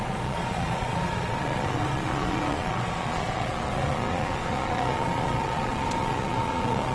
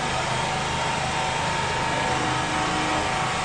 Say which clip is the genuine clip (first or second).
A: second